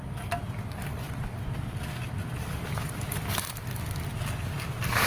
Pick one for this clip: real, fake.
real